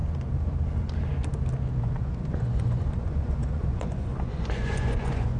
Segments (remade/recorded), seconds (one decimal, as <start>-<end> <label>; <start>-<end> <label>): 0.0-1.8 recorded; 1.8-5.4 remade